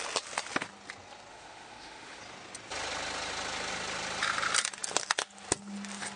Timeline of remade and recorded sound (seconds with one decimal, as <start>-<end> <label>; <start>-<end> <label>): 0.0-1.3 recorded; 1.3-2.2 remade; 2.2-6.2 recorded